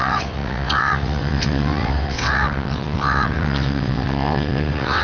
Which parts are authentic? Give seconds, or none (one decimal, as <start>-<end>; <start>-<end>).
none